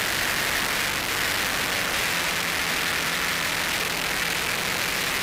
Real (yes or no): yes